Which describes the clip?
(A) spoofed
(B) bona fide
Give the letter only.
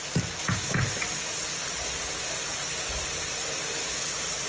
B